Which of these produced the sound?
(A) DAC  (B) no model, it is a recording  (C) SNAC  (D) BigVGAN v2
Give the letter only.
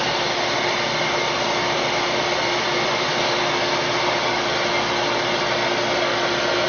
B